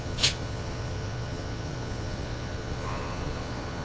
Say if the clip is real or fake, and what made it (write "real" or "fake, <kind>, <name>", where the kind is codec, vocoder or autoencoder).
fake, vocoder, Vocos